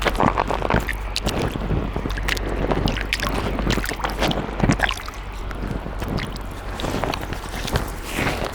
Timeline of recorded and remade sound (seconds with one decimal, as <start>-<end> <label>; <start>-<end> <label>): 0.0-8.5 recorded